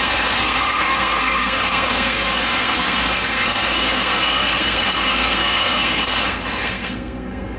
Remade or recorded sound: remade